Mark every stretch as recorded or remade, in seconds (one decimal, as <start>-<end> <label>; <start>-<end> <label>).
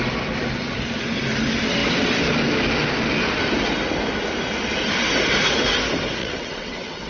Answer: 0.0-6.2 recorded; 6.2-7.1 remade